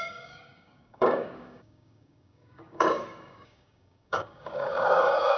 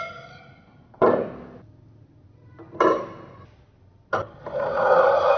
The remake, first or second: first